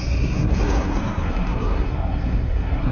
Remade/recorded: remade